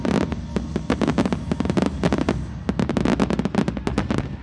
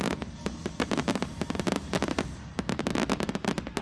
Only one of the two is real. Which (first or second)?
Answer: first